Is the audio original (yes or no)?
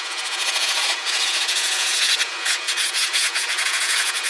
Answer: no